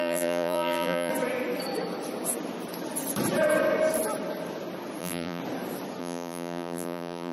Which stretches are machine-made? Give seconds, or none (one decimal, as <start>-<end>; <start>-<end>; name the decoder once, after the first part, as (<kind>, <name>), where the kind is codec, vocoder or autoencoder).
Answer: 0.0-1.1 (vocoder, BigVGAN v2); 5.0-5.4; 6.0-7.3